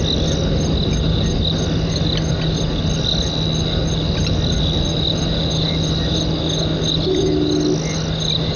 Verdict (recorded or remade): recorded